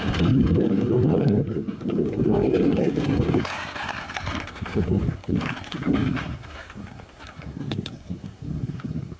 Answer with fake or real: fake